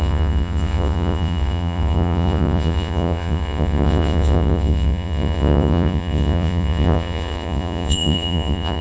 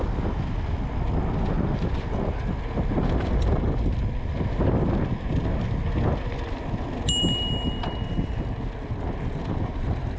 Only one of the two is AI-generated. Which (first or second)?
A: first